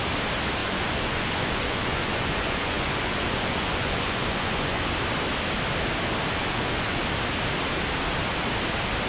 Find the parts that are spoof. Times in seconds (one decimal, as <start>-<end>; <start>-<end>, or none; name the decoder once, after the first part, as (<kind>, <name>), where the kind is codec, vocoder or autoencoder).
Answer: 0.6-4.9 (vocoder, Vocos); 6.4-7.0